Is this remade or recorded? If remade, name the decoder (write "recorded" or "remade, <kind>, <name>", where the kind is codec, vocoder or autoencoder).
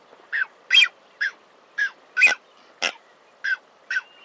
recorded